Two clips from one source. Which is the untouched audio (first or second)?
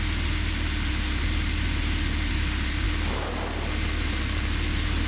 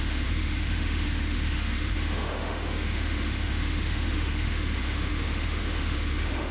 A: first